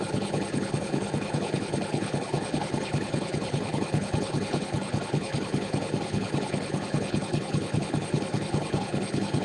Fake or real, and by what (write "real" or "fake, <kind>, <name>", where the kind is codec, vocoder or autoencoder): fake, codec, HILCodec